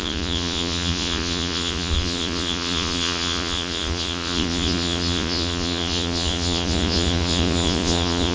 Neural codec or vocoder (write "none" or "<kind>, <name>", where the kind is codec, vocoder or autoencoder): vocoder, Vocos